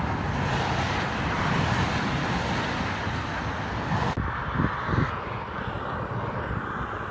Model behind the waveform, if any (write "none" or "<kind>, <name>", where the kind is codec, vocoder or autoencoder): none